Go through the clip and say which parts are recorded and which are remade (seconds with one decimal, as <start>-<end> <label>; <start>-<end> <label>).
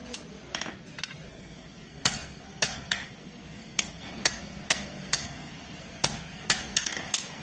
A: 0.0-1.3 recorded; 1.3-7.4 remade